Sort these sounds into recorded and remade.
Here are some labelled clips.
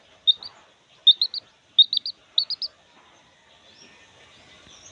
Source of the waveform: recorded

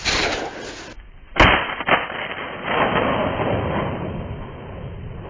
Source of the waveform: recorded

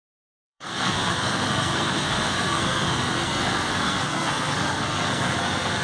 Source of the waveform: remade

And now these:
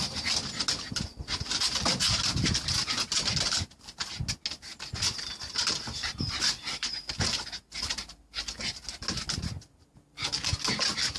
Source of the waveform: recorded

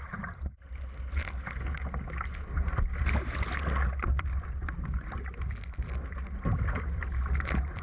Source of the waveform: recorded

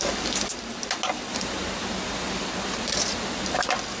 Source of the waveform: recorded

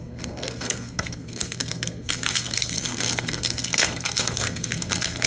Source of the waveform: remade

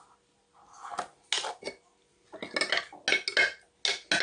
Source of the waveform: recorded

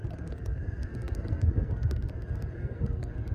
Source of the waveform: remade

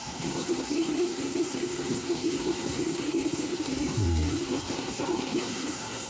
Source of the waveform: remade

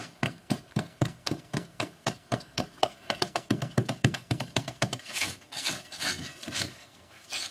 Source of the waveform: remade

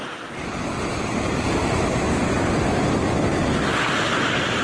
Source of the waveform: recorded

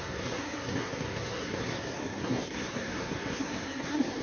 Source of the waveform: remade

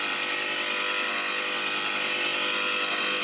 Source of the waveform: recorded